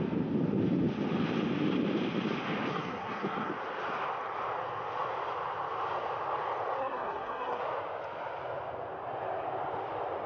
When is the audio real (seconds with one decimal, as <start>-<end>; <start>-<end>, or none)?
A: 0.0-2.7; 3.5-6.8; 7.6-10.3